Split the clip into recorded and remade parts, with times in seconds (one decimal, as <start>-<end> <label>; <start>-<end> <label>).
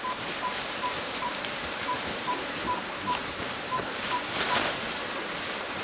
0.0-2.6 remade; 2.6-3.2 recorded; 3.2-5.8 remade